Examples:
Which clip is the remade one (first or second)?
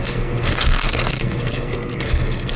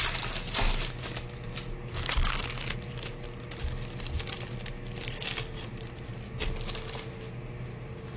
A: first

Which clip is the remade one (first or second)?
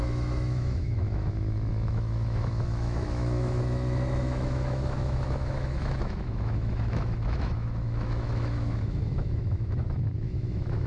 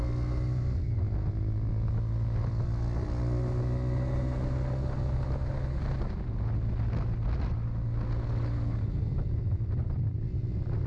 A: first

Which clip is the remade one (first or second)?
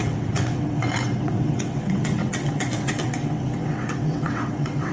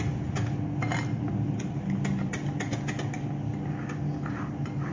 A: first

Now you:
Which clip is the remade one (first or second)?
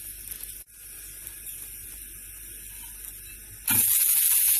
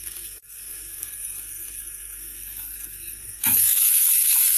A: second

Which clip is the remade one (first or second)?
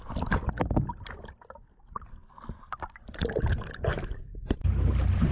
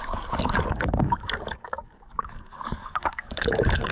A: second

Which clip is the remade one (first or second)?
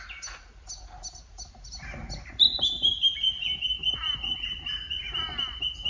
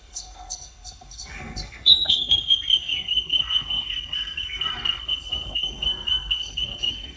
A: second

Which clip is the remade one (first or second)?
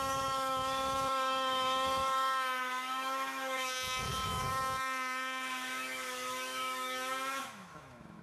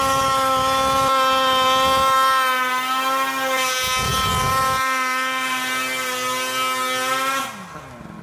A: first